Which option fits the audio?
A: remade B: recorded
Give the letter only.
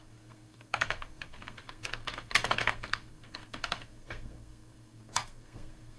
A